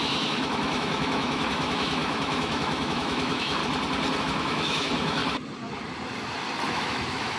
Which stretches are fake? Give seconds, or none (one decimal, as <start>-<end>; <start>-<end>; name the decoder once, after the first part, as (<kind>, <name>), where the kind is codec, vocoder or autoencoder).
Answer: 0.0-3.6 (autoencoder, DAC-VAE); 4.2-5.2; 6.7-7.4